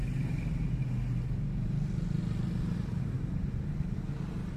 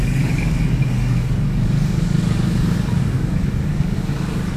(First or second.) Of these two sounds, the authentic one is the first